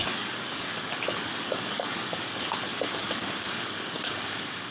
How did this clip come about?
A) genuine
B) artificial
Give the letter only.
B